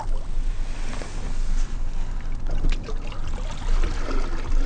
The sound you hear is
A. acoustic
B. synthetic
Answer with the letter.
A